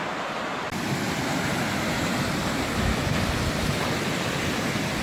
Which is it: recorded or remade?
recorded